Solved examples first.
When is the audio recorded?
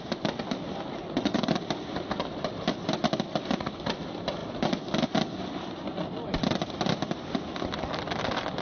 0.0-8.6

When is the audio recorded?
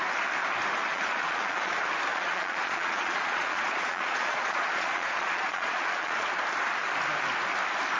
0.0-0.9; 1.7-2.1; 6.3-8.0